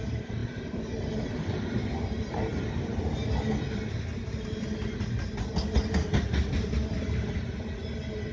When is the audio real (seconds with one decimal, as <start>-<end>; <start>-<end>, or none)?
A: 0.0-8.3